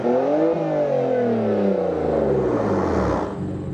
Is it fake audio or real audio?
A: real